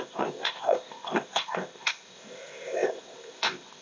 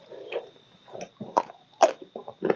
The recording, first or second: second